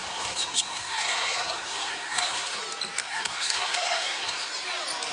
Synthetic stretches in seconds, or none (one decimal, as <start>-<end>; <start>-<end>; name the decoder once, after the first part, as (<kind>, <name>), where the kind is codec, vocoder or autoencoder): 0.0-2.6 (codec, SNAC); 3.0-4.5

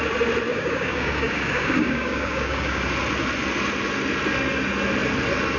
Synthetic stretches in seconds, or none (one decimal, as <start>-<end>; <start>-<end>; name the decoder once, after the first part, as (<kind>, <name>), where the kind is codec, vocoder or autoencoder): 0.5-2.8 (codec, DAC)

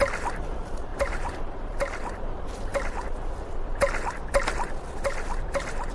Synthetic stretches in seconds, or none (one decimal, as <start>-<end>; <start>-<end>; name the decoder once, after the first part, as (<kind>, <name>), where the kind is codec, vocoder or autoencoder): 0.9-1.4 (vocoder, BigVGAN v2)

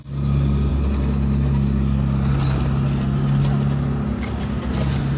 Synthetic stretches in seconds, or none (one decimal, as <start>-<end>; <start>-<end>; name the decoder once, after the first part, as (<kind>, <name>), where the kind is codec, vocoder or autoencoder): none

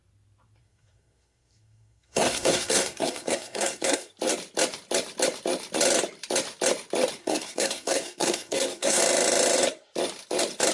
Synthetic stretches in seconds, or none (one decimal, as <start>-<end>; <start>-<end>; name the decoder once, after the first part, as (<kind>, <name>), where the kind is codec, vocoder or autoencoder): 0.6-4.1 (codec, SNAC); 7.2-9.0

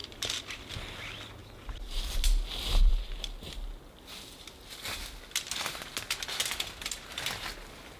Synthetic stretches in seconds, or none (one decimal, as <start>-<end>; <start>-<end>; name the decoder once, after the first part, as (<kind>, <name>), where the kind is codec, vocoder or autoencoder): 0.0-0.7 (vocoder, BigVGAN v2); 1.4-2.0

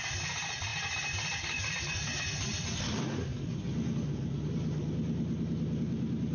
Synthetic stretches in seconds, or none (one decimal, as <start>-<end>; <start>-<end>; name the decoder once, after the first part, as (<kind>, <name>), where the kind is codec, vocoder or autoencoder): none

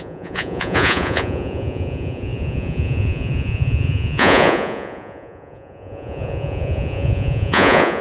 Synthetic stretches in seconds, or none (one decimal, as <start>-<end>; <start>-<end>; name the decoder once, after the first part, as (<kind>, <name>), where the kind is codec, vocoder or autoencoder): 0.0-8.0 (vocoder, Vocos)